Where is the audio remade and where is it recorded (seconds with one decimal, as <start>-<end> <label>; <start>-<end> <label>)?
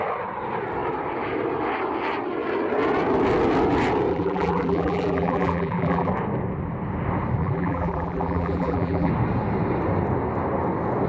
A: 0.0-4.1 recorded; 4.1-6.1 remade; 6.1-7.4 recorded; 7.4-9.1 remade; 9.1-11.1 recorded